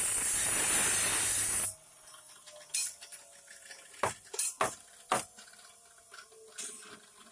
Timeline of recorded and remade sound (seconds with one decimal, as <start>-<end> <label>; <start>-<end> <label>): 0.0-7.3 recorded